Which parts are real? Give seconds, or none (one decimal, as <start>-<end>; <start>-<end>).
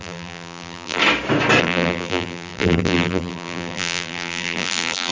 1.0-1.6